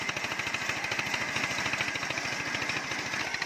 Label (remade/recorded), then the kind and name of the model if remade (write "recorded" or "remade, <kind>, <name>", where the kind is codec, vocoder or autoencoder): recorded